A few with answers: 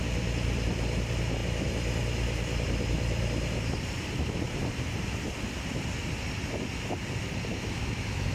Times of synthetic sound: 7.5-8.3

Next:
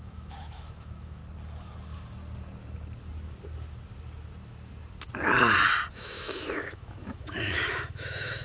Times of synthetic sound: 0.0-1.2; 5.9-8.4

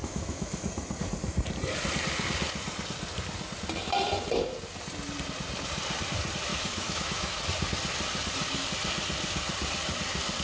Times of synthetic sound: 0.0-0.6; 6.5-7.4

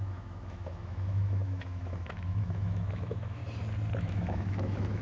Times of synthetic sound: 0.0-3.4; 4.0-5.0